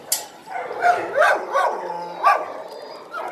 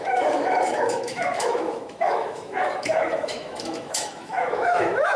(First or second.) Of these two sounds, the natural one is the first